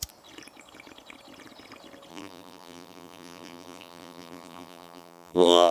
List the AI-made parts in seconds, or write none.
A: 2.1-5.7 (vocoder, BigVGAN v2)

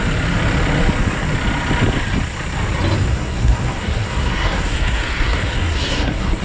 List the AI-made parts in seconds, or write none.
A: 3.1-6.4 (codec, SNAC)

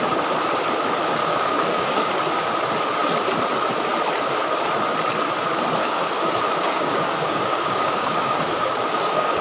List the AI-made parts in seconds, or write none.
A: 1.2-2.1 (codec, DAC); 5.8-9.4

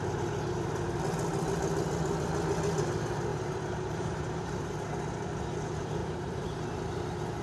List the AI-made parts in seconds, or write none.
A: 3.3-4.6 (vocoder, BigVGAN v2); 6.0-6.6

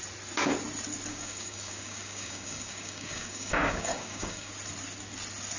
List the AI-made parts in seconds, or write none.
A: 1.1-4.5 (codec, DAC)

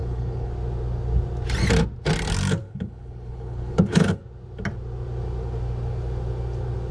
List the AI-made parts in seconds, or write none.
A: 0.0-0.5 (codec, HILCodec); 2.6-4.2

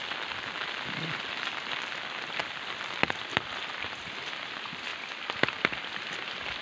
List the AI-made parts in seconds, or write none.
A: none